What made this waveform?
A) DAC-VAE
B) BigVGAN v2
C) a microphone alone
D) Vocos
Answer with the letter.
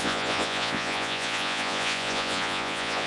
D